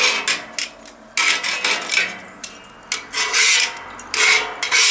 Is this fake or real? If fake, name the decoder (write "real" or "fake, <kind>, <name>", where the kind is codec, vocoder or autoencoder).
real